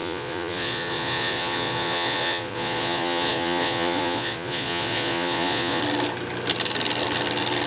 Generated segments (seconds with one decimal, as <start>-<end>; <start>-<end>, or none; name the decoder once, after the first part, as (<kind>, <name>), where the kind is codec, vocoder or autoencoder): 0.0-5.8 (vocoder, Vocos)